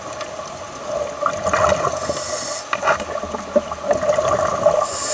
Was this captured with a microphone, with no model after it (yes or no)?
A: yes